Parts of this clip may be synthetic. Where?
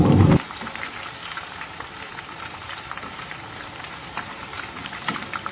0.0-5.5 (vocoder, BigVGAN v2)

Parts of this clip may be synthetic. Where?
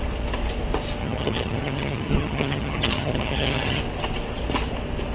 1.0-3.8 (vocoder, HiFi-GAN)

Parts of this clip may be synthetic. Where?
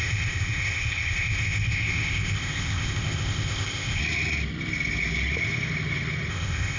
0.0-4.0 (codec, ZipCodec); 6.3-6.8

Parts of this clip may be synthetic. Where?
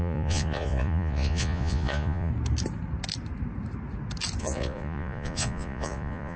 0.0-2.3 (vocoder, Vocos); 4.4-6.4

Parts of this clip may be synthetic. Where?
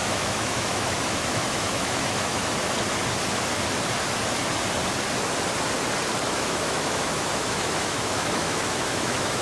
0.0-2.4 (autoencoder, DAC-VAE); 6.3-9.4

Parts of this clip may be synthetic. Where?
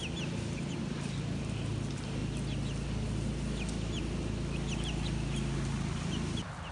none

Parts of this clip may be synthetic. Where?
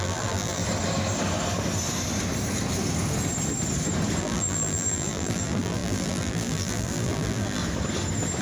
0.0-0.6 (vocoder, BigVGAN v2); 4.2-7.6